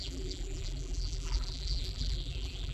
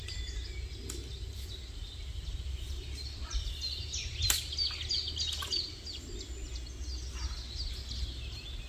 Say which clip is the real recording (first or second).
second